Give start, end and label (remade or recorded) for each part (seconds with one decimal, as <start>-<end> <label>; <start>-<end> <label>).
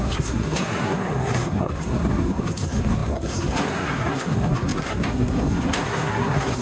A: 0.0-6.6 remade